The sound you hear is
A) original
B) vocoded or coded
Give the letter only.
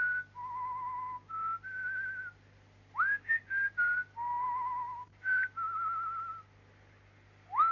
A